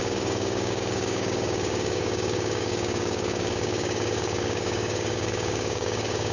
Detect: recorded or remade remade